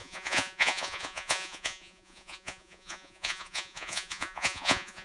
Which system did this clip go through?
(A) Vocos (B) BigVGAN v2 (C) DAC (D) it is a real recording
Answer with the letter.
A